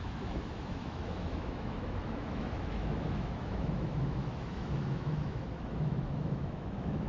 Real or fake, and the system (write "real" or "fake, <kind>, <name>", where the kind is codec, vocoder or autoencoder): fake, autoencoder, DAC-VAE